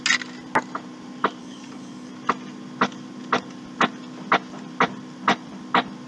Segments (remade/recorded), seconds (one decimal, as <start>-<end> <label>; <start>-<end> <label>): 0.0-1.4 recorded; 1.4-2.1 remade; 2.1-6.1 recorded